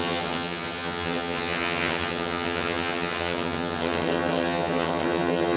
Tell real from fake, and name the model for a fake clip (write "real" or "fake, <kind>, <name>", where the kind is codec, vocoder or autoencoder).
fake, vocoder, HiFi-GAN